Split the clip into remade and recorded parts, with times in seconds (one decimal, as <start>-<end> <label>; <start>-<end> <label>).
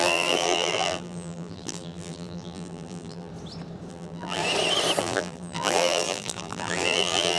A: 0.0-3.3 remade; 3.3-3.9 recorded; 3.9-4.4 remade; 4.4-5.0 recorded; 5.0-7.4 remade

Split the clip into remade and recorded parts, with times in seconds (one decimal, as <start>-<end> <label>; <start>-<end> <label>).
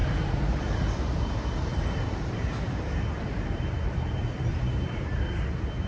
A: 0.0-0.8 remade; 0.8-1.7 recorded; 1.7-5.2 remade; 5.2-5.9 recorded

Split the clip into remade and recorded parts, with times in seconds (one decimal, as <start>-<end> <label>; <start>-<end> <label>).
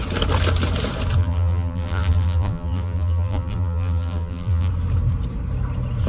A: 0.0-1.2 recorded; 1.2-4.7 remade; 4.7-6.1 recorded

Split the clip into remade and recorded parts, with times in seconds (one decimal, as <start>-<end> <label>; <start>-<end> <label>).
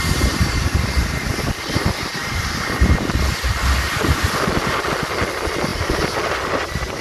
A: 0.0-2.2 recorded; 2.2-3.0 remade; 3.0-5.7 recorded; 5.7-7.0 remade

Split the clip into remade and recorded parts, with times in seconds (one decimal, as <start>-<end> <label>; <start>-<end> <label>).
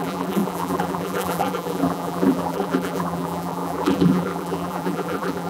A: 0.0-5.5 remade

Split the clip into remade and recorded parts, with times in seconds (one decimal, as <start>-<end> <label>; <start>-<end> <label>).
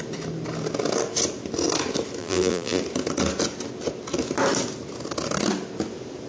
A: 0.0-2.2 recorded; 2.2-2.8 remade; 2.8-6.3 recorded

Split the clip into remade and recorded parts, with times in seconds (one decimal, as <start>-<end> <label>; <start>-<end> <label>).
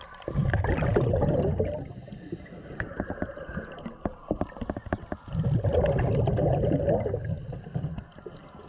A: 0.0-8.7 recorded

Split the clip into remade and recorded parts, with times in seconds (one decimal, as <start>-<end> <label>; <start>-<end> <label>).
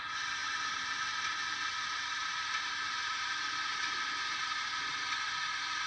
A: 0.0-0.4 recorded; 0.4-0.9 remade; 0.9-1.7 recorded; 1.7-4.4 remade; 4.4-5.9 recorded